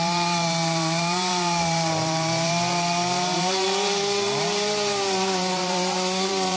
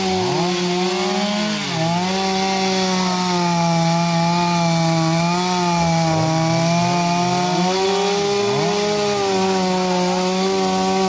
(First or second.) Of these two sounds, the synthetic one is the first